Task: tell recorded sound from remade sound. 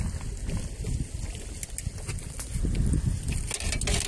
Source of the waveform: recorded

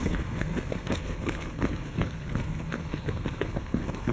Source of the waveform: remade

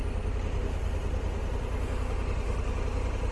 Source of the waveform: recorded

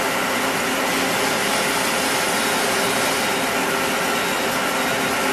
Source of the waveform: recorded